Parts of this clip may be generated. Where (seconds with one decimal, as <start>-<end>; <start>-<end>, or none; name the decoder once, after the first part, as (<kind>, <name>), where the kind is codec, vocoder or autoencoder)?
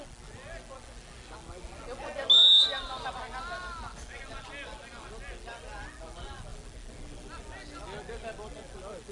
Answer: none